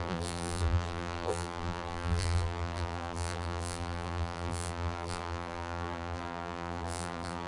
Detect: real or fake fake